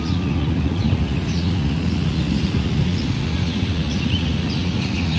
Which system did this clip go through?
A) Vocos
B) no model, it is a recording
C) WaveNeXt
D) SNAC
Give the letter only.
A